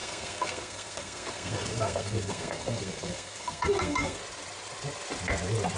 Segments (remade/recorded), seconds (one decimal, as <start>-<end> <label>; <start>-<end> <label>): 0.0-4.2 remade; 4.2-5.8 recorded